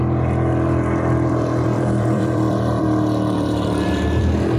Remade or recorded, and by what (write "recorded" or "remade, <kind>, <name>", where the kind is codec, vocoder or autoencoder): remade, vocoder, BigVGAN v2